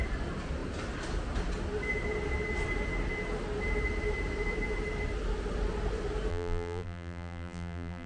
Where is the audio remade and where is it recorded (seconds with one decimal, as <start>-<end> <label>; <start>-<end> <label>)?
0.0-6.3 recorded; 6.3-8.1 remade

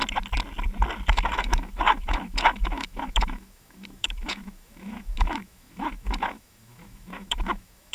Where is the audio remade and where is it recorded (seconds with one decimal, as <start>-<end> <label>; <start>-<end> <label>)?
0.0-1.1 recorded; 1.1-7.9 remade